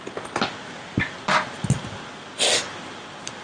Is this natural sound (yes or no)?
yes